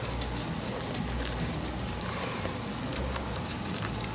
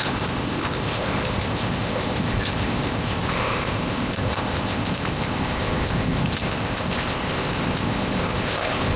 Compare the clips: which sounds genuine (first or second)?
first